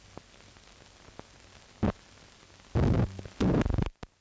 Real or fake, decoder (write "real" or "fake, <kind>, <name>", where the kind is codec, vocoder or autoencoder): real